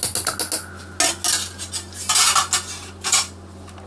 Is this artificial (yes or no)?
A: no